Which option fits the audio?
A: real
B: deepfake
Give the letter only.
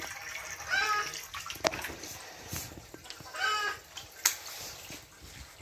A